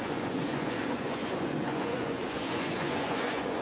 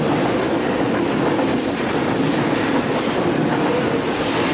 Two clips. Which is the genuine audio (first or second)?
second